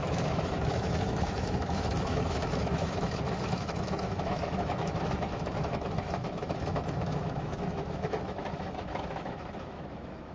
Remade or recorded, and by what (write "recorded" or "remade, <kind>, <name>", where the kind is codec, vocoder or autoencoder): remade, autoencoder, DAC-VAE